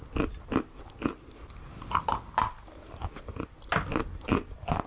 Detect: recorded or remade recorded